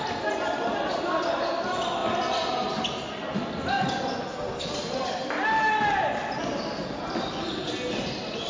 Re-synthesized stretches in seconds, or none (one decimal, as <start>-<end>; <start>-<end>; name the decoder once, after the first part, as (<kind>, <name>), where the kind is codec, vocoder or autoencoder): none